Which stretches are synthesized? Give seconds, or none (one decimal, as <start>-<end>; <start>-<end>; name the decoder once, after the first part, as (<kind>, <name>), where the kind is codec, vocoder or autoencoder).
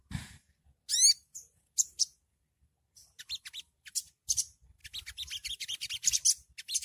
none